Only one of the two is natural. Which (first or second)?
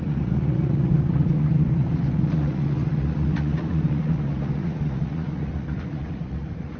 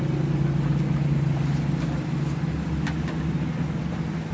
second